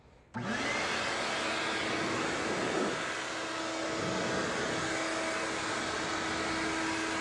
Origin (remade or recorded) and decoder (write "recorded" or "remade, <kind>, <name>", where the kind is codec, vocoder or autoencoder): recorded